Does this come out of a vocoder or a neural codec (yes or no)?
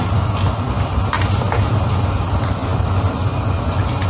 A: no